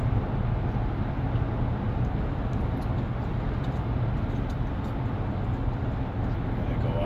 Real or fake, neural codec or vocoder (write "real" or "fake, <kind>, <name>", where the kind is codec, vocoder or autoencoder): real